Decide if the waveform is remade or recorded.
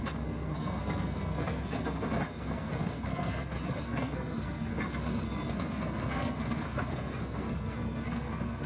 remade